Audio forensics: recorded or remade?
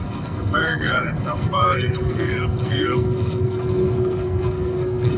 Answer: remade